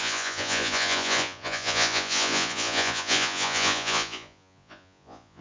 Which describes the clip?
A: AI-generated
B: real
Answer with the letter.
A